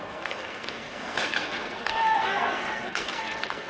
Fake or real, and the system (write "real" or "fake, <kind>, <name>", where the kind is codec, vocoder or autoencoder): fake, codec, SNAC